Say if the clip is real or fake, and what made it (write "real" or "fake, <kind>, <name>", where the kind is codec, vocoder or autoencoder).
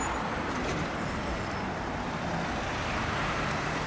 fake, vocoder, BigVGAN v2